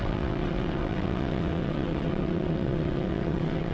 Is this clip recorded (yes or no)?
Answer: no